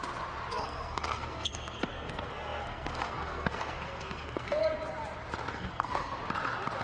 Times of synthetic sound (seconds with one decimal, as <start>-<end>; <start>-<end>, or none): 0.5-4.6; 5.5-6.2